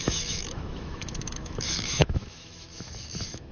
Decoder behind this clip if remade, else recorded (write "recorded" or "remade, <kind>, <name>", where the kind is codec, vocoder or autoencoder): remade, autoencoder, DAC-VAE